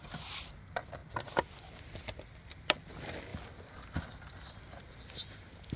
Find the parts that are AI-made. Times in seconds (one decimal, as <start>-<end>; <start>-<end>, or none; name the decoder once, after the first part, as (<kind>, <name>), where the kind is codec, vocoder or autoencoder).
none